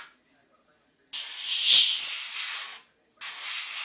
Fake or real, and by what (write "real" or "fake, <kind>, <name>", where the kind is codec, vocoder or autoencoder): real